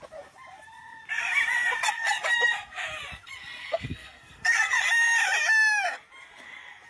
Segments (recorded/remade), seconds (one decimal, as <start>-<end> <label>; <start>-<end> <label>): 0.0-3.6 recorded; 3.6-4.8 remade; 4.8-6.9 recorded